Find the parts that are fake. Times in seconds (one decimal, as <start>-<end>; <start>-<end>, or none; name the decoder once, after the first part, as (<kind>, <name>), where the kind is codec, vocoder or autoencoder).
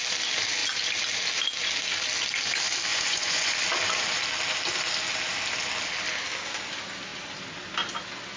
2.9-3.5 (vocoder, Vocos)